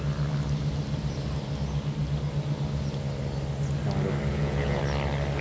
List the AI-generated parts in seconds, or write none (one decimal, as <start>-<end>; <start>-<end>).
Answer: 4.3-4.8